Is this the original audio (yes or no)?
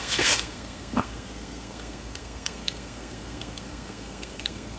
no